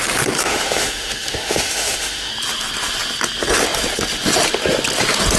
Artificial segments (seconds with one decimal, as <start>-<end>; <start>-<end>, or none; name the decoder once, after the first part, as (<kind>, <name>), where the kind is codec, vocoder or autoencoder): 0.4-2.3 (autoencoder, DAC-VAE)